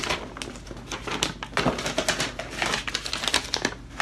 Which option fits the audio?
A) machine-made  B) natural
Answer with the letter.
B